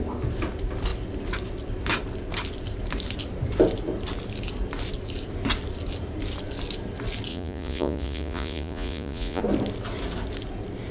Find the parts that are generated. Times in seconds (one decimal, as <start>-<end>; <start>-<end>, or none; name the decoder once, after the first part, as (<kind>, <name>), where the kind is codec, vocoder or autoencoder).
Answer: 7.3-9.4 (vocoder, Vocos)